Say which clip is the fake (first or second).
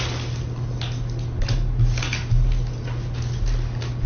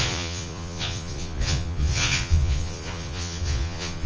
second